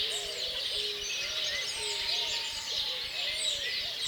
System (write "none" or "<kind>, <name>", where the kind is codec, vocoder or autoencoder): none